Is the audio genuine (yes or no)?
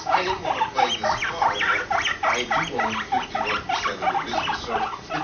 yes